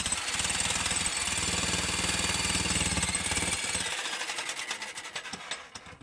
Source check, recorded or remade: recorded